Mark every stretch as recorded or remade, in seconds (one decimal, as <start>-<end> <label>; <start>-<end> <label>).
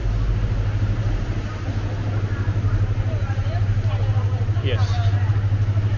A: 0.0-6.0 recorded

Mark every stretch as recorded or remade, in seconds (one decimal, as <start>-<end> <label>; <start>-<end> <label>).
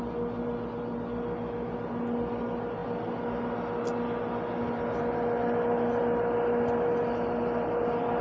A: 0.0-8.2 recorded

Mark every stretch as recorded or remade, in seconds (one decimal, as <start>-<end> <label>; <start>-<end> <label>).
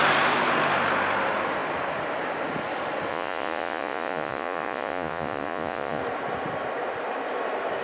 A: 0.0-3.1 recorded; 3.1-6.0 remade; 6.0-7.8 recorded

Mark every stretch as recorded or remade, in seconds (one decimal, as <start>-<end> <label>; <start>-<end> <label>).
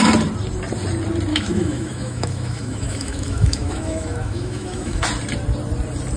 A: 0.0-1.3 recorded; 1.3-5.0 remade; 5.0-6.2 recorded